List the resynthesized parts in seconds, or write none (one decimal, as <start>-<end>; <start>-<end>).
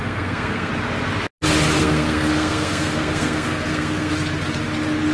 0.0-0.7; 1.8-4.1